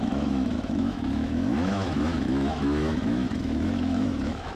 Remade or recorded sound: remade